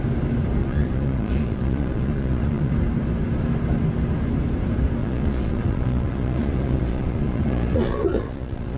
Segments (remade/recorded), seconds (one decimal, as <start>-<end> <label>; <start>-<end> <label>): 0.0-0.6 recorded; 0.6-2.7 remade; 2.7-5.0 recorded; 5.0-8.8 remade